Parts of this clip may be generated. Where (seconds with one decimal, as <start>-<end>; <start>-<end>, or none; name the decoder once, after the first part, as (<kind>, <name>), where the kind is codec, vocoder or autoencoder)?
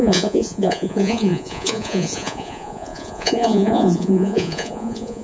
0.0-5.2 (vocoder, Vocos)